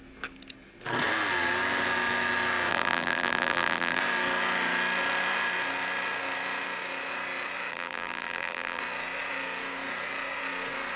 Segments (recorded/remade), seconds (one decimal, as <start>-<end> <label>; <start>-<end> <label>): 0.0-2.7 recorded; 2.7-4.0 remade; 4.0-7.7 recorded; 7.7-8.8 remade; 8.8-11.0 recorded